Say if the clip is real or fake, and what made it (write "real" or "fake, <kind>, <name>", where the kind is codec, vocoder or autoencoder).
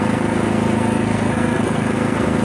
fake, codec, SNAC